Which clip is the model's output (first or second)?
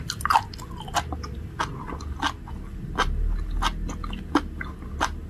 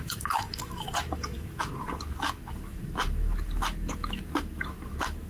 second